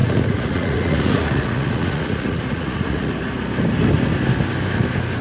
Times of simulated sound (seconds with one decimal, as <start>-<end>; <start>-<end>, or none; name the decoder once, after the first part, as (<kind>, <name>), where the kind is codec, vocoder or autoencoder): 0.0-3.1 (vocoder, Vocos)